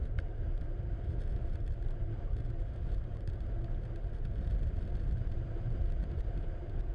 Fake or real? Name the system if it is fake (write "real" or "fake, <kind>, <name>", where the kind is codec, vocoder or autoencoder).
fake, vocoder, BigVGAN v2